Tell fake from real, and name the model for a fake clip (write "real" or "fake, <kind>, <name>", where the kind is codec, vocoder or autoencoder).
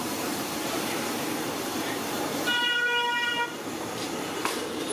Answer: fake, vocoder, BigVGAN v2